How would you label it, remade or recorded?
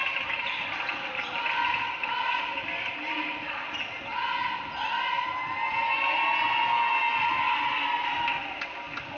recorded